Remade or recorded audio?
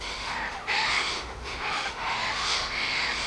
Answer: remade